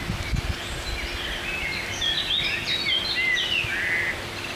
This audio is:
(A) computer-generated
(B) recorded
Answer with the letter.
B